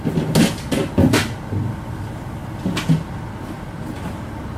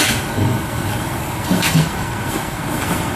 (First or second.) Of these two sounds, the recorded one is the first